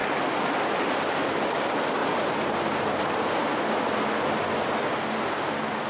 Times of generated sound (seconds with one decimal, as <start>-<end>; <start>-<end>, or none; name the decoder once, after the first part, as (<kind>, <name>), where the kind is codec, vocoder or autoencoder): 2.0-3.7 (vocoder, BigVGAN v2)